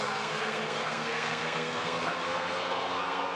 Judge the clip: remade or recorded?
remade